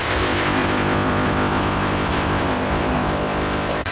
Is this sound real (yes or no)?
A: no